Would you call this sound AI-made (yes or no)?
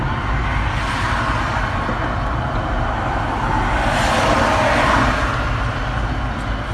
no